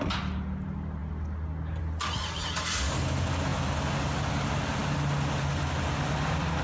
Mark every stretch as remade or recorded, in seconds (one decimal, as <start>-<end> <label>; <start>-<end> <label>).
0.0-6.6 recorded